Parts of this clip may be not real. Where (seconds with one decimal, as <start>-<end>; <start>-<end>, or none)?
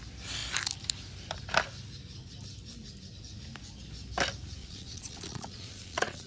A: 4.6-6.3